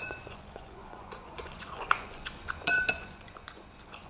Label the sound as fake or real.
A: fake